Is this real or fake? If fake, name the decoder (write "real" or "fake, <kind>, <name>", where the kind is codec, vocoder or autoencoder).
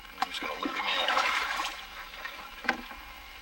fake, autoencoder, DAC-VAE